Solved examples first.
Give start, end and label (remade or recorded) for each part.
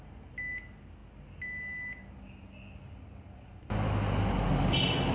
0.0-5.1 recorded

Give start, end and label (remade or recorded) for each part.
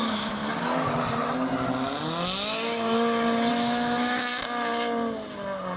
0.0-0.4 remade; 0.4-3.5 recorded; 3.5-4.3 remade; 4.3-5.8 recorded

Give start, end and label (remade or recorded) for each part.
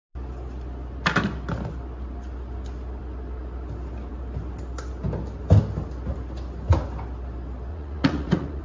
0.0-7.7 recorded; 7.7-8.6 remade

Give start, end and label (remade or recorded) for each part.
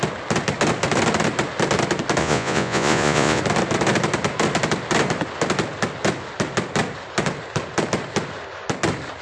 0.0-2.2 recorded; 2.2-3.4 remade; 3.4-9.2 recorded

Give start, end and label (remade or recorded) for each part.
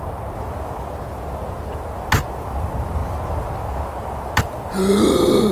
0.0-5.5 recorded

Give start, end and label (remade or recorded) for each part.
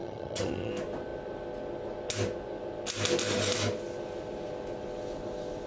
0.0-0.7 remade; 0.7-5.7 recorded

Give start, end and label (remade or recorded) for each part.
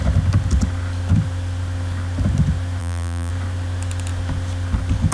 0.0-2.8 recorded; 2.8-3.3 remade; 3.3-5.1 recorded